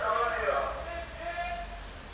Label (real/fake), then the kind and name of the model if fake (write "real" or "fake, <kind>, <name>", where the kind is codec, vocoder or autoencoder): real